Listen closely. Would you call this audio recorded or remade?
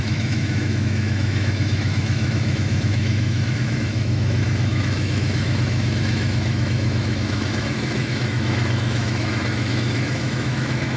remade